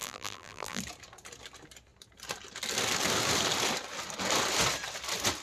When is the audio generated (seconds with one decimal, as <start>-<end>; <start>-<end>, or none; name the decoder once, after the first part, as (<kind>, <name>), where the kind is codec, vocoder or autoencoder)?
0.0-0.8 (vocoder, BigVGAN v2)